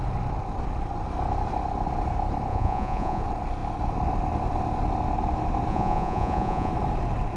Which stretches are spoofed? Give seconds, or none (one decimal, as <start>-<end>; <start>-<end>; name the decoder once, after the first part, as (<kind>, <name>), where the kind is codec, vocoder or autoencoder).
2.5-3.2 (vocoder, Vocos); 5.7-6.7